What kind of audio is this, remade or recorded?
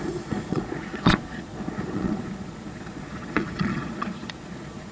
remade